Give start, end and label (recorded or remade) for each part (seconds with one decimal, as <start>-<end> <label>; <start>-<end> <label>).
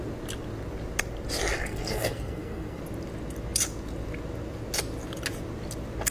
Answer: 0.0-1.5 recorded; 1.5-2.8 remade; 2.8-6.1 recorded